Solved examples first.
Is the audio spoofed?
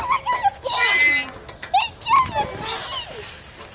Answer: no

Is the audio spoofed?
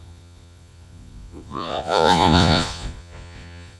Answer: yes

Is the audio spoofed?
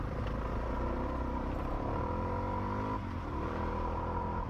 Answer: yes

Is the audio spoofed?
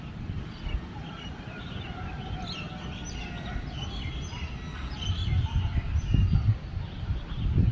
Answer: no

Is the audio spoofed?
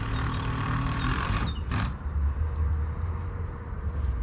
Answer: yes